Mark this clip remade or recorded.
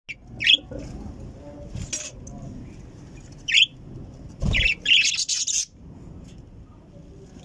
recorded